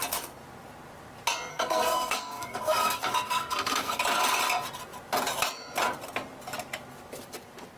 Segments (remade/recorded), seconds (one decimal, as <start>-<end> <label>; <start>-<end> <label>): 0.0-1.5 recorded; 1.5-4.0 remade; 4.0-7.8 recorded